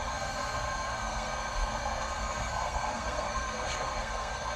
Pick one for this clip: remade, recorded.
remade